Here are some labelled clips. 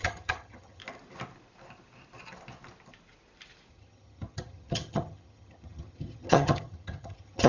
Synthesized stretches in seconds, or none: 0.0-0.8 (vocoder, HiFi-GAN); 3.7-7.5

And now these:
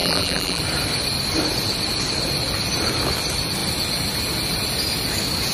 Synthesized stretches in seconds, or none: 0.0-0.6 (vocoder, BigVGAN v2)

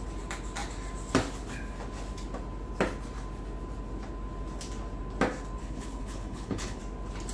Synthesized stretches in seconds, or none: 5.6-6.8 (codec, HILCodec)

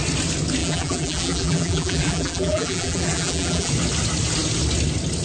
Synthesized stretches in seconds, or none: 0.6-3.7 (vocoder, BigVGAN v2)

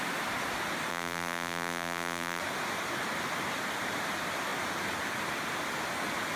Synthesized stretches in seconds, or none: 0.9-2.4 (vocoder, BigVGAN v2)

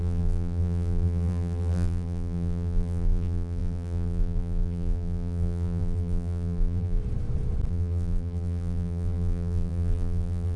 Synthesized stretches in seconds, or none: 0.0-7.0 (vocoder, BigVGAN v2); 7.7-10.6

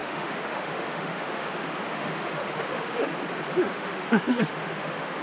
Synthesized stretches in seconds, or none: 0.0-3.1 (autoencoder, DAC-VAE); 3.6-5.2